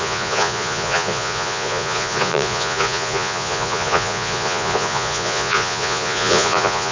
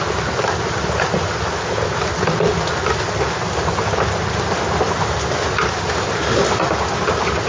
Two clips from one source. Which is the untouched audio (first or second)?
second